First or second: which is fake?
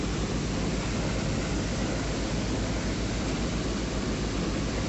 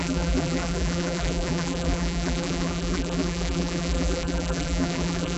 second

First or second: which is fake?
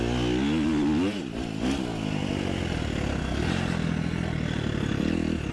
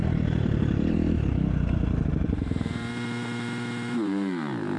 second